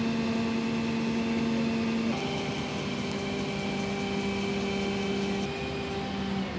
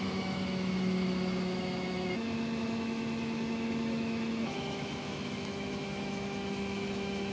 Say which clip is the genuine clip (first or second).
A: first